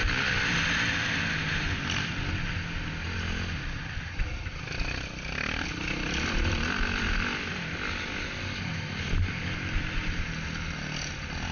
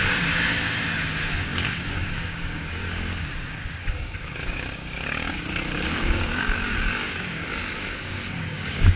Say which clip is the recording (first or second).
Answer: first